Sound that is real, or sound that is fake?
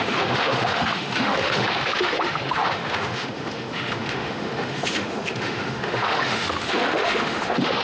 fake